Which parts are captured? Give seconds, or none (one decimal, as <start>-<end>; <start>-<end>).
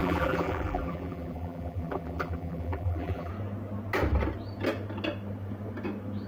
3.3-6.3